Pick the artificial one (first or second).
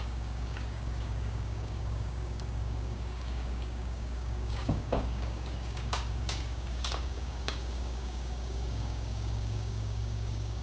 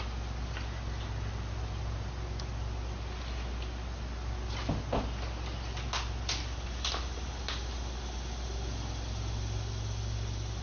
first